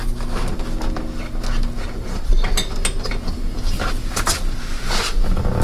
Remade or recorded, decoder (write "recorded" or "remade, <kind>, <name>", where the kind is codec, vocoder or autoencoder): recorded